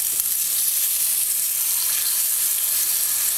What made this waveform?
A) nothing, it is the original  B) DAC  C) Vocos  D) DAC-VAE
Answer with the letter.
A